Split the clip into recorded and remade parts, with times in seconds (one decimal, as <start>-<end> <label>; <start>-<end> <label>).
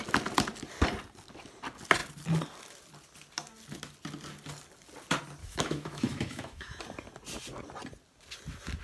0.0-5.4 recorded; 5.4-6.8 remade; 6.8-8.8 recorded